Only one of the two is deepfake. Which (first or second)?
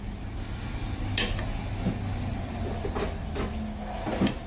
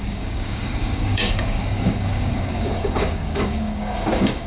second